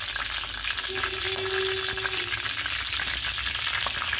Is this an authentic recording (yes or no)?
yes